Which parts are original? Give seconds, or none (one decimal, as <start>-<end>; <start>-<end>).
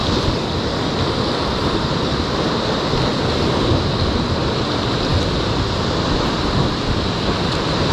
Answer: 0.0-7.9